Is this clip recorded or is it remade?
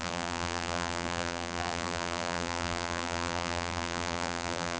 remade